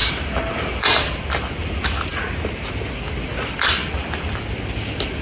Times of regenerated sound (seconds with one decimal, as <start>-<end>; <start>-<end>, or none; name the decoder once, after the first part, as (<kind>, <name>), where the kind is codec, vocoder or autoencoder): 0.0-1.7 (vocoder, BigVGAN v2); 3.8-4.4

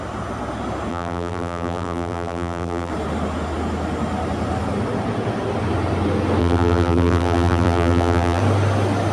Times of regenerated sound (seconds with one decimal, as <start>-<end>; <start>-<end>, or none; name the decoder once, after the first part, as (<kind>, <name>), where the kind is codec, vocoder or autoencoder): 0.9-2.9 (vocoder, BigVGAN v2); 6.4-8.4

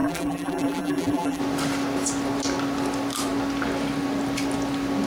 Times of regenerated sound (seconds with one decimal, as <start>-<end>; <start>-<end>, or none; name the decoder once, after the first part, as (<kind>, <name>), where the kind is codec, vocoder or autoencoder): 0.0-1.4 (vocoder, BigVGAN v2)

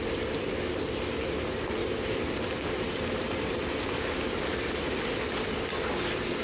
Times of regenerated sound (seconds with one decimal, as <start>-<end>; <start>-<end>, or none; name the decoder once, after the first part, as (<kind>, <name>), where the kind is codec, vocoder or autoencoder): 1.8-4.8 (vocoder, BigVGAN v2)

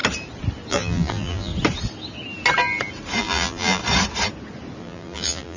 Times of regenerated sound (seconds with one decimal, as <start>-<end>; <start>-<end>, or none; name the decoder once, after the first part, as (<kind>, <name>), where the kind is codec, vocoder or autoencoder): 0.7-1.5 (vocoder, BigVGAN v2); 3.2-3.8; 4.8-5.6

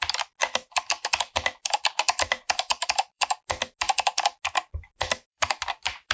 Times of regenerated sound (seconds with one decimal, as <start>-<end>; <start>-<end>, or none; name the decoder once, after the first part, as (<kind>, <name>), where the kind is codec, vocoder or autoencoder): 0.4-3.3 (vocoder, BigVGAN v2); 5.3-6.1